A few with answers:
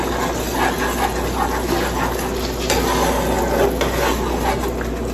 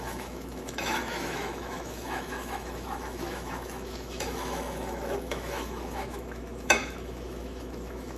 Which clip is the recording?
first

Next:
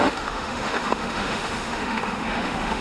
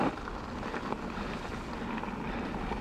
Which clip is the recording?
second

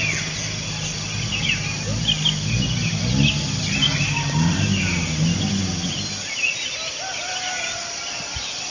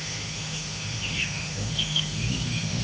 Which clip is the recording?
first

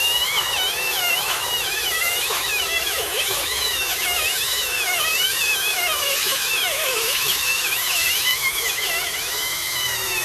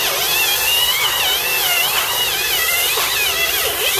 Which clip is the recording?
second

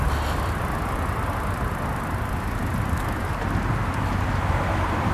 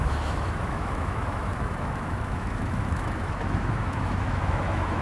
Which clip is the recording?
first